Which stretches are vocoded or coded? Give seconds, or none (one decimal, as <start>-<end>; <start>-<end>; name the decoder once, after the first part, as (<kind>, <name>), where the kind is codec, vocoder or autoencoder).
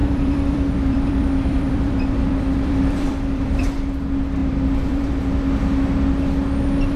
0.0-3.7 (vocoder, BigVGAN v2); 4.4-5.2